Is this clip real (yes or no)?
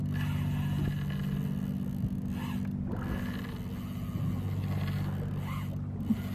yes